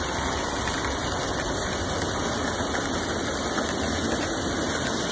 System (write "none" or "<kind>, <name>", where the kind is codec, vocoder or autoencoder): none